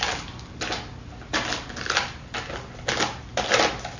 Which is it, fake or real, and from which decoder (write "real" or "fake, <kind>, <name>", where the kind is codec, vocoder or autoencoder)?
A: real